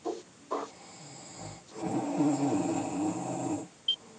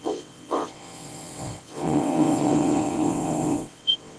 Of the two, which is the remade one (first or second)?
second